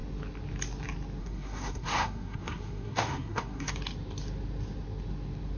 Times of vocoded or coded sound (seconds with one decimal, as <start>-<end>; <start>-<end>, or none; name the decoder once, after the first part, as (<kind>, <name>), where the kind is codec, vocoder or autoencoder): 1.2-3.7 (codec, SNAC)